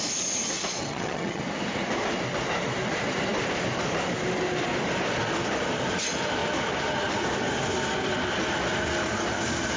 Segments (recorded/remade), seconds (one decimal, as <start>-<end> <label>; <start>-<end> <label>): 0.0-0.8 recorded; 0.8-1.4 remade; 1.4-9.8 recorded